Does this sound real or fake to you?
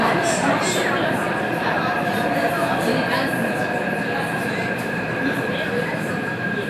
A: fake